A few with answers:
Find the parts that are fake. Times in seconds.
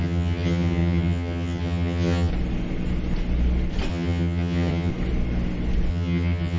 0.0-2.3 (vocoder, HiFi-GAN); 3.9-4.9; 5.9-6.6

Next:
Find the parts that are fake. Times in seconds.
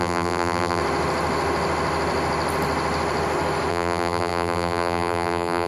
0.0-0.8 (vocoder, BigVGAN v2); 3.7-5.7